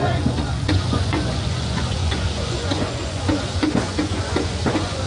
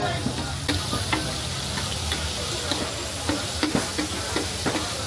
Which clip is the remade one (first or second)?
first